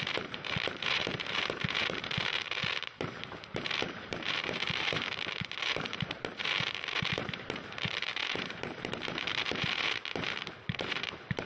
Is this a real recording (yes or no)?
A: no